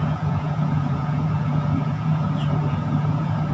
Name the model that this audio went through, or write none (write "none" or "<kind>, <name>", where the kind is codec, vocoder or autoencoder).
vocoder, Vocos